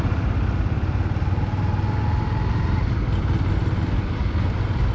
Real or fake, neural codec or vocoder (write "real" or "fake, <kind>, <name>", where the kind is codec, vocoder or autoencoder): real